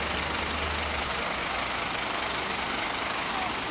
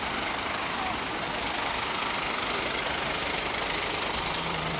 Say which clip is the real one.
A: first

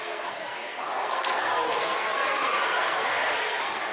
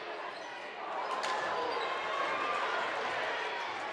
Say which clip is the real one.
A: second